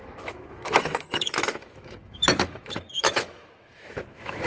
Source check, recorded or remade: remade